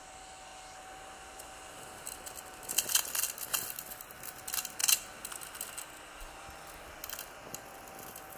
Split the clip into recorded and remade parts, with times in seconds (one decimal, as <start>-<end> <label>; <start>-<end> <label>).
0.0-8.4 recorded